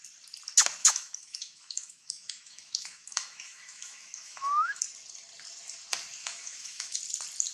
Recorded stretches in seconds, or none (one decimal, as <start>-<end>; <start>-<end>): 0.0-0.8; 4.8-6.2; 7.0-7.5